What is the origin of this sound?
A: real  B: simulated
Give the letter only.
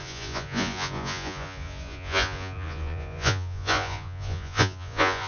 B